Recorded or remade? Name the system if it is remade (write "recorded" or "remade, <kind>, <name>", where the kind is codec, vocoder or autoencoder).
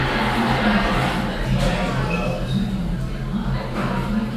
recorded